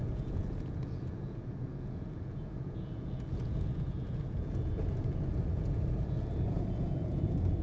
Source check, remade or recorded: remade